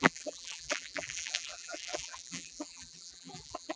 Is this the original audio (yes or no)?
no